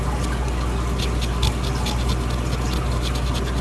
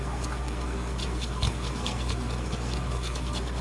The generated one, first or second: second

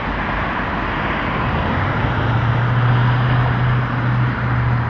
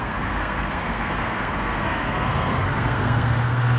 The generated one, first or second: second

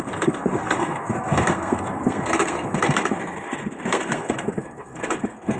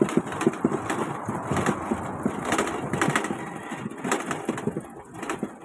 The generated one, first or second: first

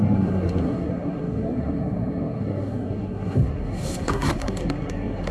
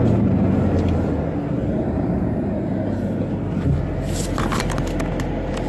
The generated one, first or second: first